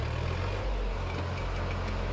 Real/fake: real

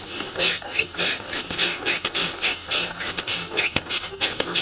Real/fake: fake